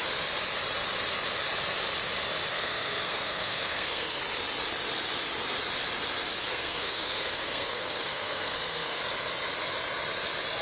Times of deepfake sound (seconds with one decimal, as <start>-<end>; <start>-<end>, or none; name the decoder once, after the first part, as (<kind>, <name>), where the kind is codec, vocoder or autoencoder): 2.5-4.2 (codec, SNAC); 6.5-9.0